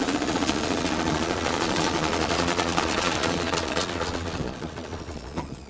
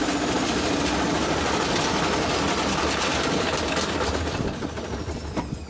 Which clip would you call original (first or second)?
second